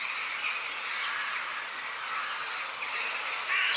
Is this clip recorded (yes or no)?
yes